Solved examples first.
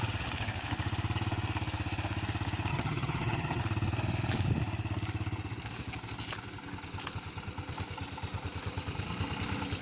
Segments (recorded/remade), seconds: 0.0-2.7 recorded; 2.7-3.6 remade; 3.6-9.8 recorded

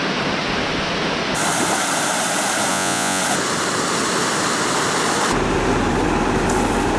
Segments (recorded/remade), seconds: 0.0-2.7 recorded; 2.7-3.2 remade; 3.2-7.0 recorded

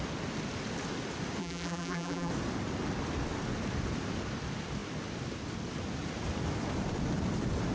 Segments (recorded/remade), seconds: 0.0-1.4 recorded; 1.4-2.3 remade; 2.3-7.7 recorded